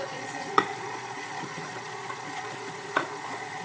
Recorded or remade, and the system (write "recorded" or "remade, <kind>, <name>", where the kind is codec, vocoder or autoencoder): remade, vocoder, Vocos